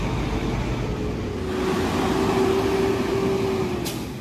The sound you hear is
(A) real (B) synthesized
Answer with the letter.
A